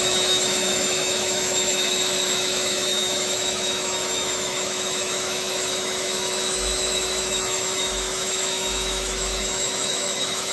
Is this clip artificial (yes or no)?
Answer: yes